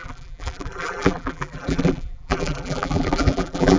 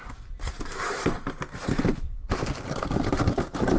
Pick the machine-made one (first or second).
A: first